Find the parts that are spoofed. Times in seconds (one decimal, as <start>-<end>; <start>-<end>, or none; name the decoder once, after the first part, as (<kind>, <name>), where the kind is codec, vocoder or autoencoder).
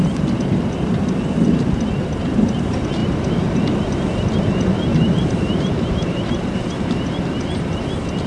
4.9-7.3 (vocoder, BigVGAN v2)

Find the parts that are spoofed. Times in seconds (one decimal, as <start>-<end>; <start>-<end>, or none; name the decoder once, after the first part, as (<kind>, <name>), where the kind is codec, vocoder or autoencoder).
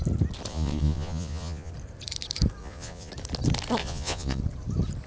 0.5-1.7 (vocoder, Vocos); 2.6-3.1; 3.8-4.4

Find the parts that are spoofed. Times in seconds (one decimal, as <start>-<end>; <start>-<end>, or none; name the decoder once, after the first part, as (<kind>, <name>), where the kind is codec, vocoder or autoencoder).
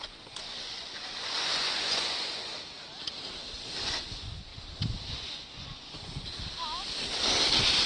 0.0-2.5 (vocoder, Vocos); 3.8-4.5; 5.1-6.3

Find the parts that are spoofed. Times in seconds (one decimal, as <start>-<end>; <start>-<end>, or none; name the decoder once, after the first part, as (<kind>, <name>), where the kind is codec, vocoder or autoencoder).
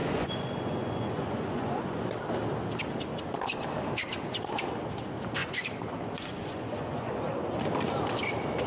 0.0-2.1 (vocoder, Vocos); 5.4-7.1